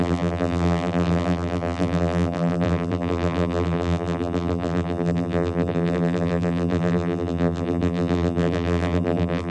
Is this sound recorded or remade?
remade